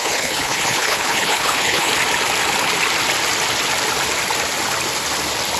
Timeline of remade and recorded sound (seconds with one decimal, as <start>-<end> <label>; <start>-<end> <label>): 0.0-1.9 remade; 1.9-5.6 recorded